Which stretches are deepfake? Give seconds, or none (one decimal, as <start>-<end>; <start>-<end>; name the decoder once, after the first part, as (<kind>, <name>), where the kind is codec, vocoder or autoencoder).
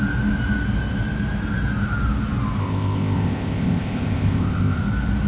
2.6-4.8 (codec, ZipCodec)